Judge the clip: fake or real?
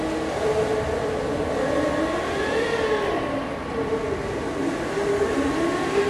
real